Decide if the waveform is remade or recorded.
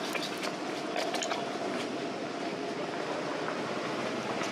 recorded